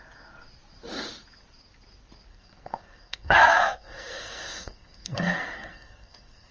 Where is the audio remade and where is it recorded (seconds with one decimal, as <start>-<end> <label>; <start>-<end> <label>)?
0.0-2.3 recorded; 2.3-6.5 remade

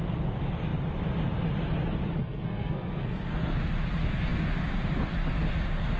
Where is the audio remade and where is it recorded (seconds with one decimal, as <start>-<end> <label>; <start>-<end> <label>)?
0.0-2.2 recorded; 2.2-3.6 remade; 3.6-6.0 recorded

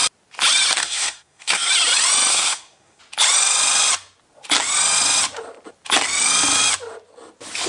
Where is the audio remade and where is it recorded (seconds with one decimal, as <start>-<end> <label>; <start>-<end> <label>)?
0.0-0.8 recorded; 0.8-1.7 remade; 1.7-2.3 recorded; 2.3-3.0 remade; 3.0-7.7 recorded

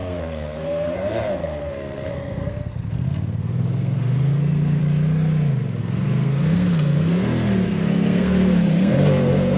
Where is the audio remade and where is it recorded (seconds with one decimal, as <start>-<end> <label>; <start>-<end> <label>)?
0.0-4.8 remade; 4.8-5.8 recorded; 5.8-9.6 remade

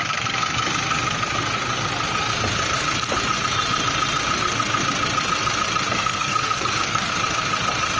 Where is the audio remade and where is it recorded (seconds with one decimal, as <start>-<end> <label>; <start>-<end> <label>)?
0.0-5.9 recorded; 5.9-7.1 remade; 7.1-8.0 recorded

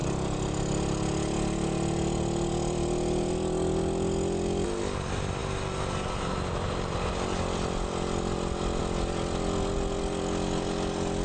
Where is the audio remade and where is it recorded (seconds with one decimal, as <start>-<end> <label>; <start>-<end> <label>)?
0.0-11.2 recorded